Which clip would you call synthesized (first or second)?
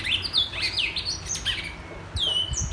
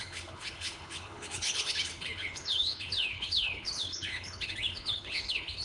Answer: second